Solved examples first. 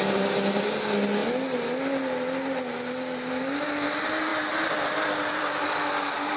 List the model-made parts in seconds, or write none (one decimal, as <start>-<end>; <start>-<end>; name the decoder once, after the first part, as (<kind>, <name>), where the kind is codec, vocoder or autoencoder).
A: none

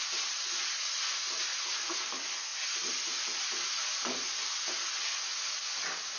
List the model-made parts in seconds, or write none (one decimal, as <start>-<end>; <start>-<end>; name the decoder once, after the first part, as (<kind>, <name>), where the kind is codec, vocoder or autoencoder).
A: 1.5-2.1 (vocoder, Vocos)

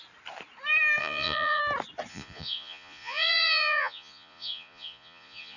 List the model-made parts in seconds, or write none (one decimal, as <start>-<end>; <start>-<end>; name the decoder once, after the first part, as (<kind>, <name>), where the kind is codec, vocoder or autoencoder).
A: 1.0-1.6 (vocoder, Vocos); 2.1-5.6

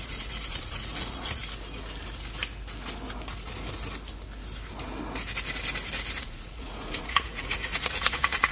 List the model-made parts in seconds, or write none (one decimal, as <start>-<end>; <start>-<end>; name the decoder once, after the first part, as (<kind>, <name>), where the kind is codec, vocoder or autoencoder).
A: 0.0-1.4 (vocoder, Vocos); 6.2-8.5